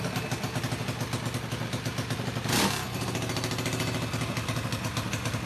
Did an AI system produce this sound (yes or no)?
no